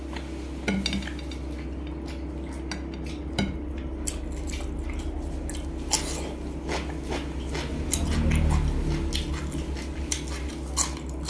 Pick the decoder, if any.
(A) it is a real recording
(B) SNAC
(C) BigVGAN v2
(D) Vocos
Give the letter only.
A